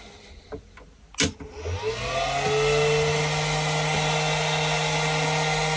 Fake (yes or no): no